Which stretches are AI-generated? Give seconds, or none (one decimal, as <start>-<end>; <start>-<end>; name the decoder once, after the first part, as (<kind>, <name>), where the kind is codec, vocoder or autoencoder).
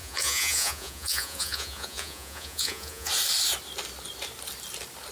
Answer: 0.0-3.1 (vocoder, Vocos)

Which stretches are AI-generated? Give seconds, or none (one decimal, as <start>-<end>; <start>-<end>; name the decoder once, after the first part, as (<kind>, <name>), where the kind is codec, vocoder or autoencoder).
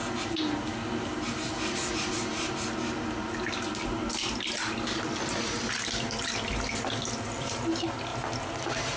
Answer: none